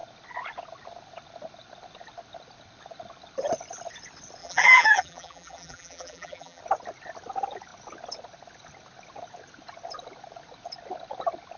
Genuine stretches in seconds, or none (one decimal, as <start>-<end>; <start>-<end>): 0.0-4.4; 6.6-11.6